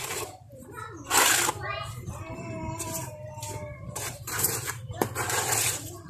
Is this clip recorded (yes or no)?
no